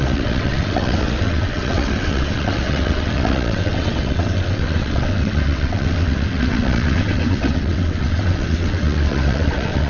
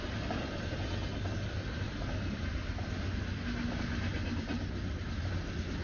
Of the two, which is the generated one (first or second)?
first